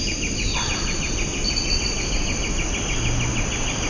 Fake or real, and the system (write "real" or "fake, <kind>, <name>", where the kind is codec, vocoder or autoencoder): real